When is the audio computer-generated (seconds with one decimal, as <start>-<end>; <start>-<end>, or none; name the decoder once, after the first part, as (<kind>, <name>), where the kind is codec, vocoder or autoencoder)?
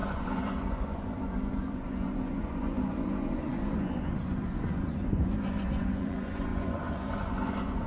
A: 0.0-7.9 (vocoder, Vocos)